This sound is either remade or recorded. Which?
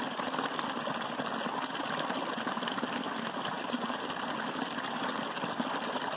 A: recorded